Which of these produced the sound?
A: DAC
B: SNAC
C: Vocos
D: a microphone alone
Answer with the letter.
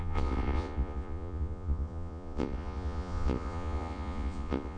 C